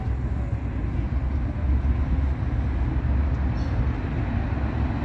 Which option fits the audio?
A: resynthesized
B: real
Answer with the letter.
B